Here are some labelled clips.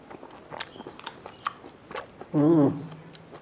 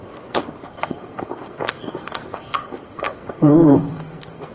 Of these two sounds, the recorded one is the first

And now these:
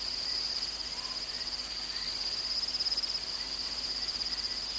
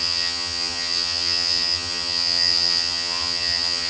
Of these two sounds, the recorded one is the first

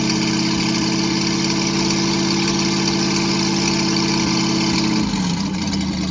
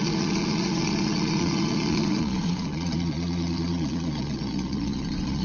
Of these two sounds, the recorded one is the first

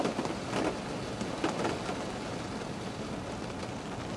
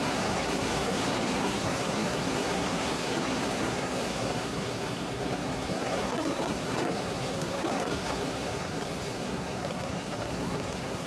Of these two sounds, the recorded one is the first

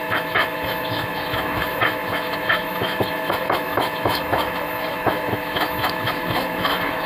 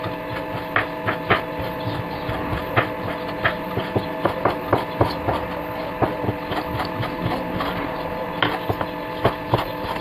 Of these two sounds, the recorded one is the second